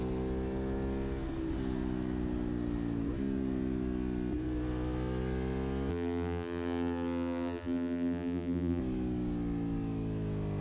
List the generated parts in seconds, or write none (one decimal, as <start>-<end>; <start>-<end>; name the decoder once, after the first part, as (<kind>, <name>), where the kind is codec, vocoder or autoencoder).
5.9-8.8 (vocoder, BigVGAN v2)